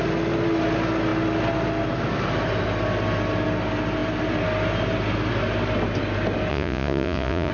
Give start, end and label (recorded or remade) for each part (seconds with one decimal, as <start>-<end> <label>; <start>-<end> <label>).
0.0-6.5 recorded; 6.5-7.5 remade